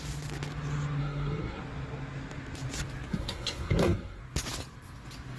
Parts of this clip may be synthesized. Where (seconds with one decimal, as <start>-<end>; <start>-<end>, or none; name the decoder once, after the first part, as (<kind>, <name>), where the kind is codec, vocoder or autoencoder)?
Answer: 1.0-1.6 (codec, SNAC); 3.1-4.2

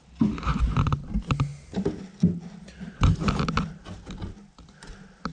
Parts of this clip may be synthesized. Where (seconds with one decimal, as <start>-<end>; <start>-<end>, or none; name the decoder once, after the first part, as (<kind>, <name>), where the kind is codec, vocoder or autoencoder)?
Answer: none

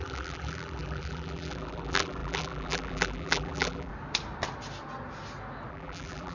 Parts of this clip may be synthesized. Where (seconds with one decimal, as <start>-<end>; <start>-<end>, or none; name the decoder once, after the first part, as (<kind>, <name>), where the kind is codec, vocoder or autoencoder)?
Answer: 0.0-3.9 (vocoder, BigVGAN v2); 5.7-6.3